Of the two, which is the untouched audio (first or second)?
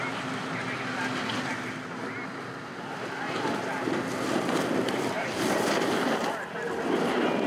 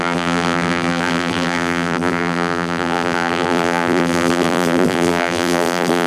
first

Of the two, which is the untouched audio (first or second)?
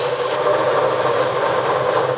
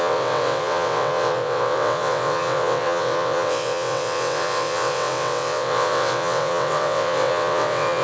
first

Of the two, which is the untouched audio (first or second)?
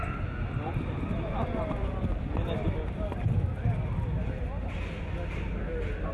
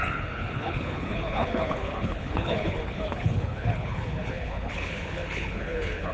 first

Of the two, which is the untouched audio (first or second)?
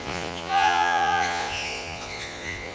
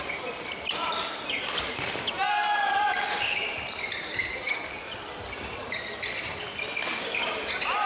second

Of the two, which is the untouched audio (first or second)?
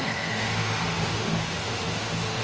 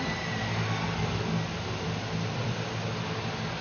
second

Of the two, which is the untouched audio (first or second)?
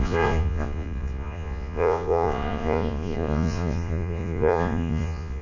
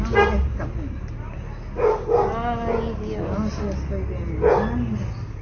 second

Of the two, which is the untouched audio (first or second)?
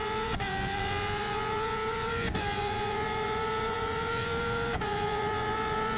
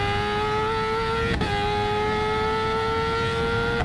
second